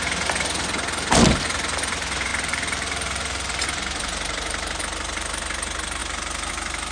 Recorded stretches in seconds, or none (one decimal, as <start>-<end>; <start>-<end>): 0.0-2.3; 4.8-6.9